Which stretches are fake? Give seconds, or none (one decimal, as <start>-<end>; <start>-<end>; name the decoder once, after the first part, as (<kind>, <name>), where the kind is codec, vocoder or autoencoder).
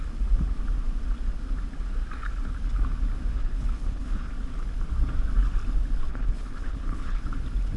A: 3.3-4.3 (codec, HILCodec); 6.1-7.2